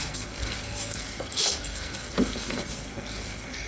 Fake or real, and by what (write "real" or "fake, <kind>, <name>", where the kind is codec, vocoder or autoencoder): fake, codec, SNAC